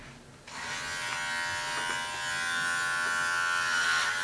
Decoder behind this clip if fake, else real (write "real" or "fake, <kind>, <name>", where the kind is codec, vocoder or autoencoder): real